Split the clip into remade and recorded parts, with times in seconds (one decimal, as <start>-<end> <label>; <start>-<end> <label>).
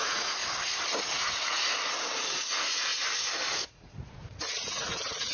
0.0-0.4 remade; 0.4-1.1 recorded; 1.1-1.6 remade; 1.6-2.5 recorded; 2.5-2.9 remade; 2.9-3.7 recorded; 3.7-5.3 remade